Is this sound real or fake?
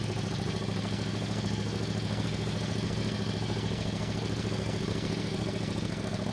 fake